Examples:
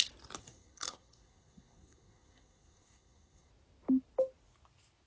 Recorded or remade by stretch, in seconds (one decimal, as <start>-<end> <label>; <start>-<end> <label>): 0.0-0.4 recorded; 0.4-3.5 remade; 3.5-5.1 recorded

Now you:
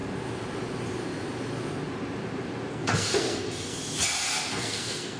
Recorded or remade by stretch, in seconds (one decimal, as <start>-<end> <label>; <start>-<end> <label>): 0.0-2.7 recorded; 2.7-3.8 remade; 3.8-4.5 recorded; 4.5-5.2 remade

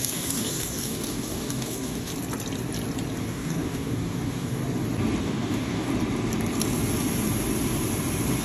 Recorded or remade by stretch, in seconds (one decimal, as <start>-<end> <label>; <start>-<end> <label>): 0.0-2.1 remade; 2.1-3.2 recorded; 3.2-4.6 remade; 4.6-5.2 recorded; 5.2-5.9 remade; 5.9-8.4 recorded

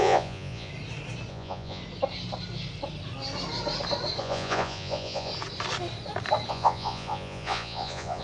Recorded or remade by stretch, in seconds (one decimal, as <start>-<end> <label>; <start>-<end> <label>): 0.0-0.7 remade; 0.7-1.3 recorded; 1.3-1.8 remade; 1.8-4.2 recorded; 4.2-5.3 remade; 5.3-6.5 recorded; 6.5-8.2 remade